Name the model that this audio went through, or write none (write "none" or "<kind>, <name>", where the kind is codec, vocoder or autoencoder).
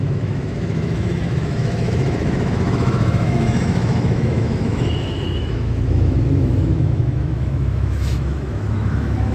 autoencoder, DAC-VAE